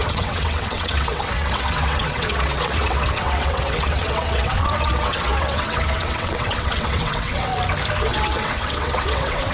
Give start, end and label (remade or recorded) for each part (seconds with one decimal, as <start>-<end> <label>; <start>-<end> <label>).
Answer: 0.0-7.5 remade; 7.5-8.0 recorded; 8.0-9.5 remade